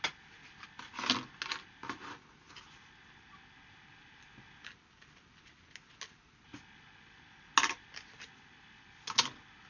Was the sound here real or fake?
real